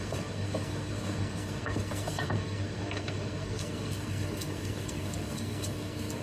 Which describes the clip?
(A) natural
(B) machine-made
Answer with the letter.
B